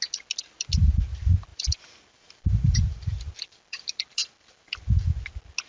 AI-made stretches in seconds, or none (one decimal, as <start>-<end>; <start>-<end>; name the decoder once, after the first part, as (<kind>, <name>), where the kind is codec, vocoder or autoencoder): 1.5-4.9 (vocoder, BigVGAN v2)